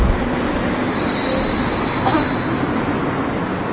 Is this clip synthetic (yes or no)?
no